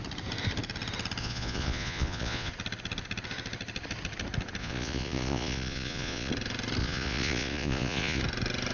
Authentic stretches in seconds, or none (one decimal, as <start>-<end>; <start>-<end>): 0.0-1.2; 2.5-4.6; 6.3-6.8; 8.2-8.7